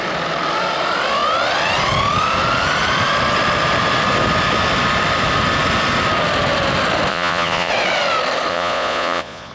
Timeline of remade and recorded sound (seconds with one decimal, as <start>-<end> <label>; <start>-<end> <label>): 0.0-7.1 recorded; 7.1-7.7 remade; 7.7-8.5 recorded; 8.5-9.5 remade